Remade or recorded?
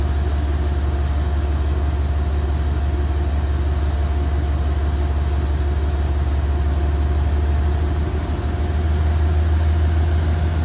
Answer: recorded